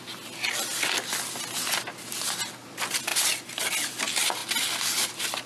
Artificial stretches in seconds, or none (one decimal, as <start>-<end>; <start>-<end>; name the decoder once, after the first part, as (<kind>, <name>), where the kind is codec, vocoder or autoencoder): none